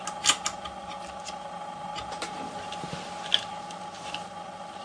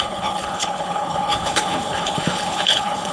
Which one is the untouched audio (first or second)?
first